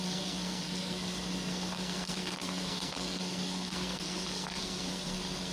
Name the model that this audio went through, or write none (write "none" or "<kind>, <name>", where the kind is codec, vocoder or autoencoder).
codec, SNAC